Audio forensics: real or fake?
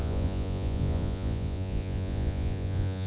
fake